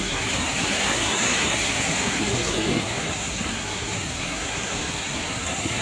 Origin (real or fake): fake